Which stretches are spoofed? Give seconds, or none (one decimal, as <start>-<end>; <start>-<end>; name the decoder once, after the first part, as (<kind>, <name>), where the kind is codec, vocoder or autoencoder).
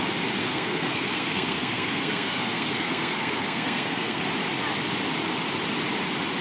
0.4-4.2 (codec, SNAC)